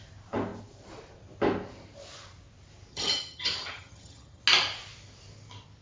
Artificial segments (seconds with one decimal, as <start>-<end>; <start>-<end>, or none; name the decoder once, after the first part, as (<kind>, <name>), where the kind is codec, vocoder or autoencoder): 2.9-4.4 (vocoder, HiFi-GAN)